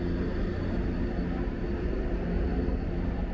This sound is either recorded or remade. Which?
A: recorded